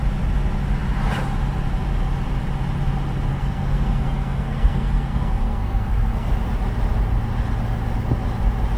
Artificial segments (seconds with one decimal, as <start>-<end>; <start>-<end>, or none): 3.3-6.3